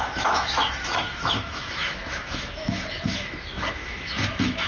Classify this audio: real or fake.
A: fake